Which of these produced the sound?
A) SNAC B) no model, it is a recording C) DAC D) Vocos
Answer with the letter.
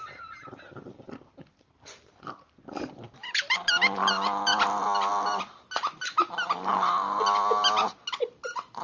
B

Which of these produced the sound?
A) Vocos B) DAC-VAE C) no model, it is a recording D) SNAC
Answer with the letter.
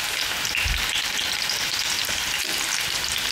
C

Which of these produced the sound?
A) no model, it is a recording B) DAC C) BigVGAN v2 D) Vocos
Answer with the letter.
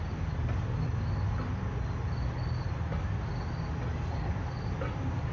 A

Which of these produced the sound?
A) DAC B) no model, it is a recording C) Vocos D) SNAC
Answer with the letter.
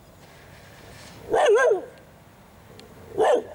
B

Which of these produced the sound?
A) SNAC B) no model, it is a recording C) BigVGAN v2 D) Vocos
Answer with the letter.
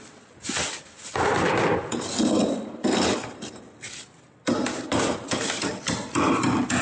C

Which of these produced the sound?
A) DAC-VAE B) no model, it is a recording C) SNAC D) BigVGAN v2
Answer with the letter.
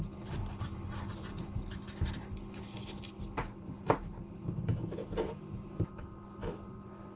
B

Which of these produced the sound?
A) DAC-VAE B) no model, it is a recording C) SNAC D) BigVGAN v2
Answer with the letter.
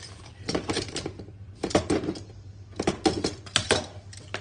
D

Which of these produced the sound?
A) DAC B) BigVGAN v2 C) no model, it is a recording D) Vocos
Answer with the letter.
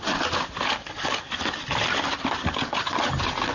C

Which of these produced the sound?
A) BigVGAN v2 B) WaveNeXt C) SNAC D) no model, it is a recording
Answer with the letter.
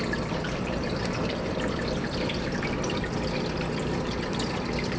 A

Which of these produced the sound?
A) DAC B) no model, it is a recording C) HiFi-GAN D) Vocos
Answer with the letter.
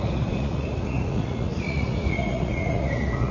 D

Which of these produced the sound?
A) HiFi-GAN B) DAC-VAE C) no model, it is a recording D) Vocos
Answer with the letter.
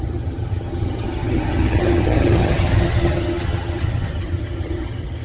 A